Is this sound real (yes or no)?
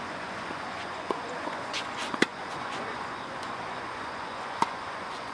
no